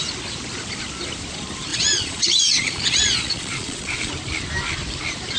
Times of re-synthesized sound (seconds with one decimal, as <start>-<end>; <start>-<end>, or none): 1.7-4.1

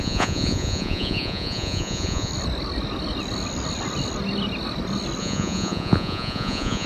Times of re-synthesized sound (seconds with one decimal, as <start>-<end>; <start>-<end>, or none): 0.0-2.3; 5.2-6.9